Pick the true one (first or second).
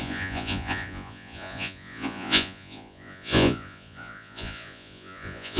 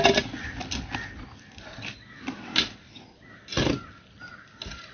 second